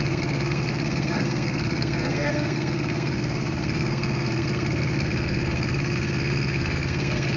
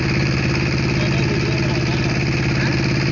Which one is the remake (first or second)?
first